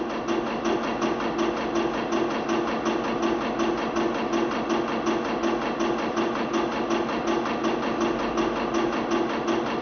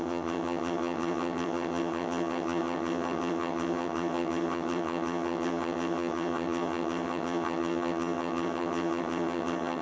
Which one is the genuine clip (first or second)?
first